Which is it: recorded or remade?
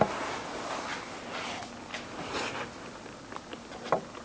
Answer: recorded